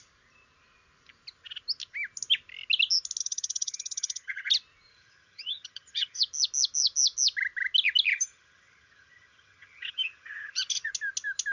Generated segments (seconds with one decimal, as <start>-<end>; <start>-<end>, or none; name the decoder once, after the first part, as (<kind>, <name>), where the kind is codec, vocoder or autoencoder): 3.2-4.5 (vocoder, HiFi-GAN); 4.9-6.2; 8.1-10.9